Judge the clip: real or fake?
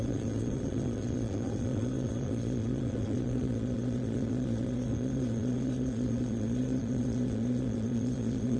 fake